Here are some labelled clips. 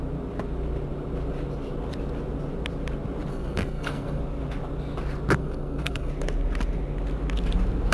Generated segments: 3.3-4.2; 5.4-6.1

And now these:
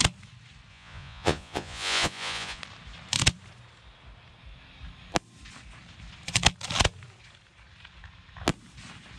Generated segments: 0.7-2.6

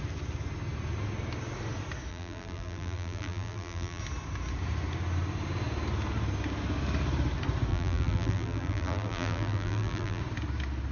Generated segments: 2.1-4.0; 7.7-10.2

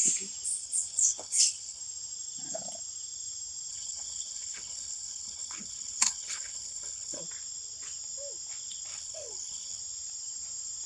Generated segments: 0.5-1.8; 3.7-7.2; 8.9-9.8